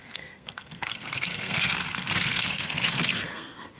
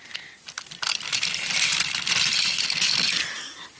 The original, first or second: second